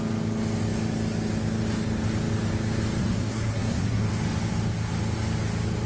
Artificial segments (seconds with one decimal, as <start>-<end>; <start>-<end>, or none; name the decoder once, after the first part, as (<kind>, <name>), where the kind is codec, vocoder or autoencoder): 3.0-4.0 (codec, SNAC)